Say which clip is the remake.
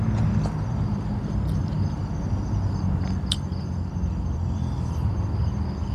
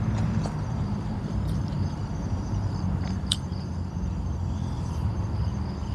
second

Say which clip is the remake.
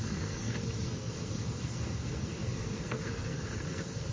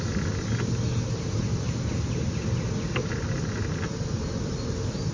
first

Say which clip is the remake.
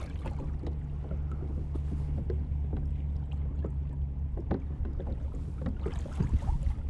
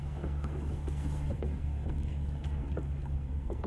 second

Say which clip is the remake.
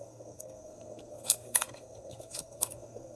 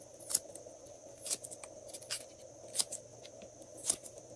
first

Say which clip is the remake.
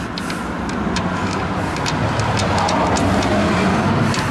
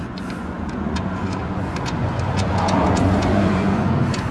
second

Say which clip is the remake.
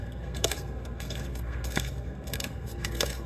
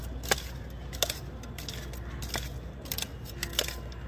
first